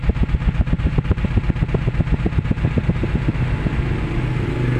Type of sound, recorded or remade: recorded